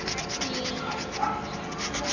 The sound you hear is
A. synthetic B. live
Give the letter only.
B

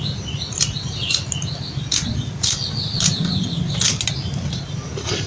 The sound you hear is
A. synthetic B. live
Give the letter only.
B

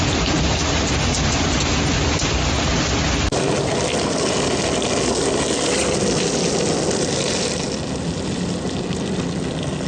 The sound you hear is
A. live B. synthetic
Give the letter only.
A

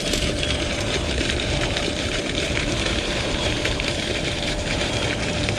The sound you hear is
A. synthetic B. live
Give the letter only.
A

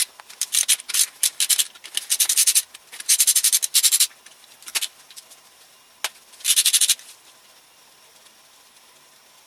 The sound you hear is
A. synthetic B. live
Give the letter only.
B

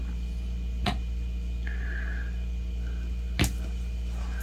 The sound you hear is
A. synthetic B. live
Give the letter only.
B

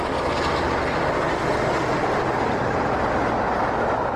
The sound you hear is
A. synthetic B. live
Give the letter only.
B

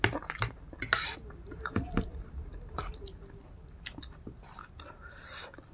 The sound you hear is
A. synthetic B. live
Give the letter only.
B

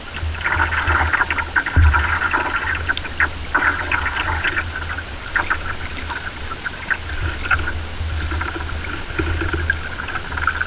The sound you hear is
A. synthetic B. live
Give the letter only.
B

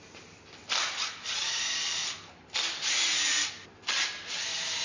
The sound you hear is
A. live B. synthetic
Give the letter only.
A